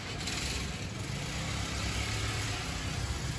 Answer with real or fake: real